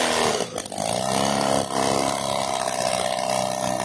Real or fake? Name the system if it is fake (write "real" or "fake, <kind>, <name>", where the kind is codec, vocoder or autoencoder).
real